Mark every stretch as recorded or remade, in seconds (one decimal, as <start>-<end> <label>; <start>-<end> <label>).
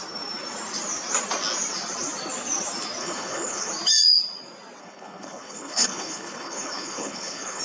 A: 0.0-3.0 recorded; 3.0-3.7 remade; 3.7-4.8 recorded; 4.8-7.6 remade